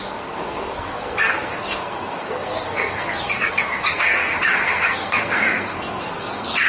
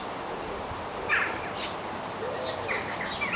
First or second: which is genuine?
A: second